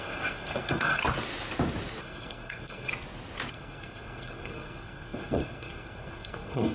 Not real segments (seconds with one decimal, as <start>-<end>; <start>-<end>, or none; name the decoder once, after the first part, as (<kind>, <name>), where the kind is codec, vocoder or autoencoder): 0.0-1.0 (codec, SNAC); 2.0-2.9; 3.5-6.7